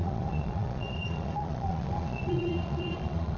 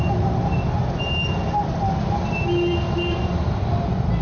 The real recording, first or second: second